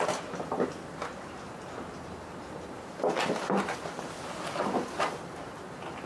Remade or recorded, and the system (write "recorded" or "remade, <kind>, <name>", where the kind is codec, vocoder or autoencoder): recorded